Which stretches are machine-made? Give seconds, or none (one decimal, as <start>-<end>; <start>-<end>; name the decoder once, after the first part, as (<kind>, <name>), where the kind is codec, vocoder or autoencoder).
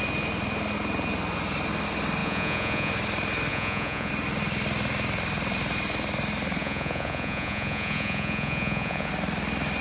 2.2-2.9 (vocoder, Vocos); 3.5-4.1; 6.6-9.1